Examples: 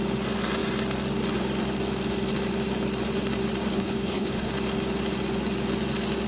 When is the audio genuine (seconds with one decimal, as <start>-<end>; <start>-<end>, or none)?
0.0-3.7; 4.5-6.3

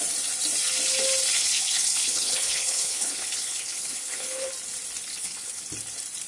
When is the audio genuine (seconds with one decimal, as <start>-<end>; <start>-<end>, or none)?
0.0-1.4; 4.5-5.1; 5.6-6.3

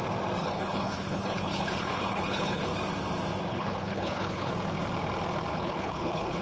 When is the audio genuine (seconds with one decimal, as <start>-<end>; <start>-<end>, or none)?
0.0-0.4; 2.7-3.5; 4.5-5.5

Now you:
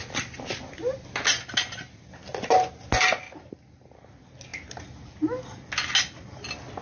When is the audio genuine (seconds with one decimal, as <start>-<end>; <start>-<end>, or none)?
0.0-6.8

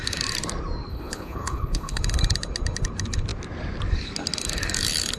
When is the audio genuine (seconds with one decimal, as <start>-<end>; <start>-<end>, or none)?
0.0-0.9; 2.0-5.2

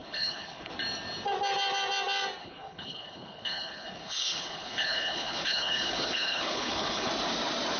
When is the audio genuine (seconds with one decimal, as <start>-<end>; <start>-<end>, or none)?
0.7-2.4; 7.1-7.8

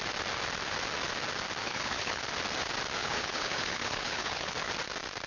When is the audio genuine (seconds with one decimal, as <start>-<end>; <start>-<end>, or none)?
0.0-1.6; 2.2-3.0; 4.7-5.3